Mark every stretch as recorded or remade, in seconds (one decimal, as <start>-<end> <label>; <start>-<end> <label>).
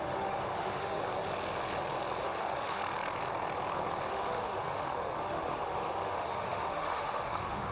0.0-1.0 remade; 1.0-2.2 recorded; 2.2-2.8 remade; 2.8-4.1 recorded; 4.1-7.7 remade